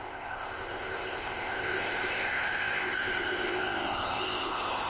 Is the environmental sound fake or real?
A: fake